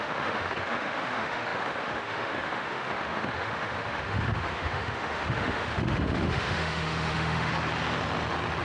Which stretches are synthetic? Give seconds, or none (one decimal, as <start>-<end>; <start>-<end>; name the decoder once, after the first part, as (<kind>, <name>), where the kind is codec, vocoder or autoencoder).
0.0-7.5 (autoencoder, DAC-VAE)